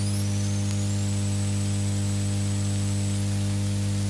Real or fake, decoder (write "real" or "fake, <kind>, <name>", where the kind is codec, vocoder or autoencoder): real